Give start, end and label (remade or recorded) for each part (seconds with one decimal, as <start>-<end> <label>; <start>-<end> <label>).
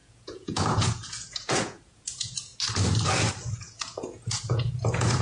0.0-2.5 remade; 2.5-3.5 recorded; 3.5-5.2 remade